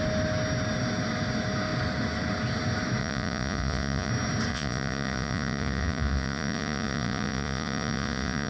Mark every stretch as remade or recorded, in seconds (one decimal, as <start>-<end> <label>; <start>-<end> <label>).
0.0-3.0 recorded; 3.0-4.1 remade; 4.1-4.5 recorded; 4.5-8.5 remade